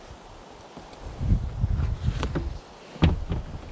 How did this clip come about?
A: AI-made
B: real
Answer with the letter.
B